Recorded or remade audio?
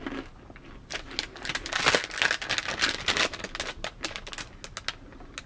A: recorded